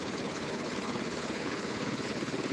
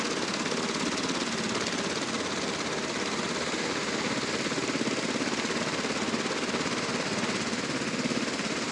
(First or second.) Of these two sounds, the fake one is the first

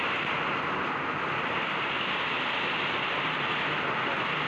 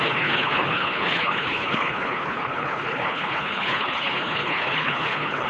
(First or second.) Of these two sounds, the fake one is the second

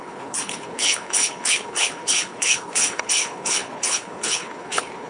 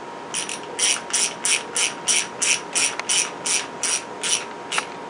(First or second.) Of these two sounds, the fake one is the first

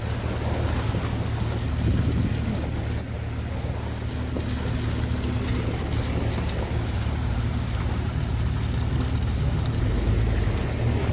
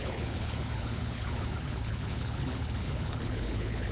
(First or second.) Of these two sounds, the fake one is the second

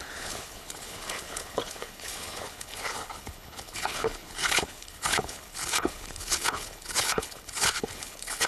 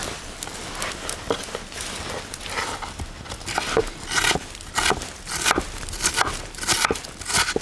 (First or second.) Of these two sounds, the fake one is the first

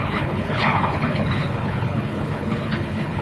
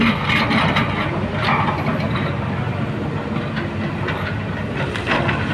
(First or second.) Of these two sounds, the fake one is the first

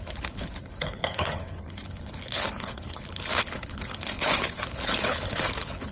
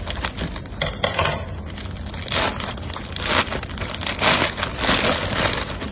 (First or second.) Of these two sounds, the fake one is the first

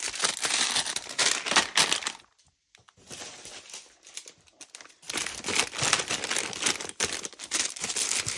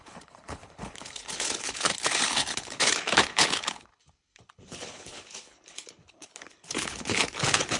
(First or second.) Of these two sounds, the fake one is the second